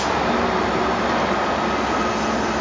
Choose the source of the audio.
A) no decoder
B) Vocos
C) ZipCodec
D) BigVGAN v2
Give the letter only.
A